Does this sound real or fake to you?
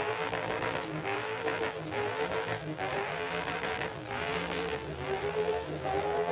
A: fake